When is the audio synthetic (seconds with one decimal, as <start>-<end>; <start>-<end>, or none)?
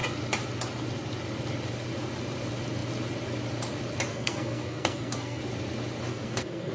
4.1-5.4; 6.1-6.7